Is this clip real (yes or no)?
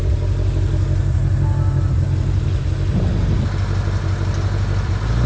yes